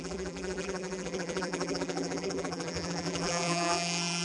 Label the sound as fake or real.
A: fake